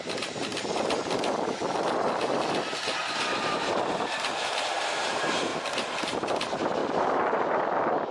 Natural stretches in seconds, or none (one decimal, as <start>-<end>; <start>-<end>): 0.5-3.1; 5.5-6.0; 6.8-8.1